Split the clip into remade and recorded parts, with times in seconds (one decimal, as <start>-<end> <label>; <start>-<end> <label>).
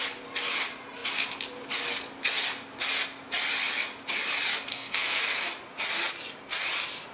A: 0.0-4.7 recorded; 4.7-5.2 remade; 5.2-7.1 recorded